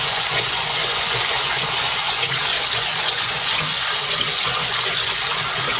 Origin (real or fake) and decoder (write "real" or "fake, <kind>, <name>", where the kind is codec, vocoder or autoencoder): fake, vocoder, Vocos